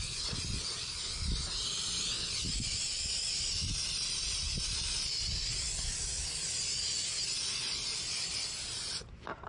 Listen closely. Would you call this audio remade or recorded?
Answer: recorded